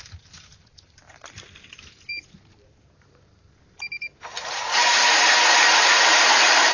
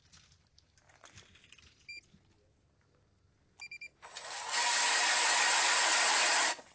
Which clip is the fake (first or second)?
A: first